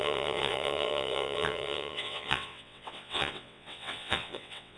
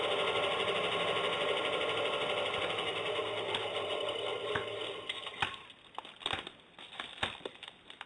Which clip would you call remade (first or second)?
first